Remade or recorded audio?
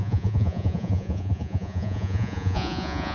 remade